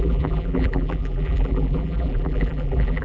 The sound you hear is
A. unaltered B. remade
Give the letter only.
B